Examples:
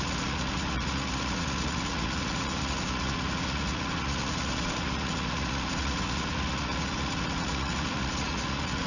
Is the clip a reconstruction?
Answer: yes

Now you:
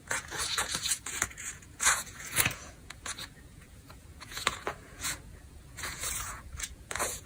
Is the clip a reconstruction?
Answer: yes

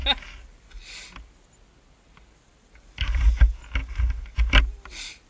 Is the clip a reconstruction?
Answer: no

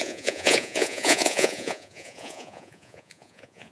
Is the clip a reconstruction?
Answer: yes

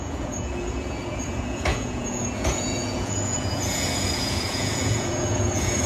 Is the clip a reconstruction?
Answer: yes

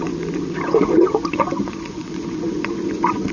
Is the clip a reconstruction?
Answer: yes